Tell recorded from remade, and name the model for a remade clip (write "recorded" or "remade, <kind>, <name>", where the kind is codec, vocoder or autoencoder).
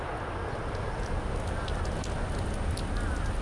recorded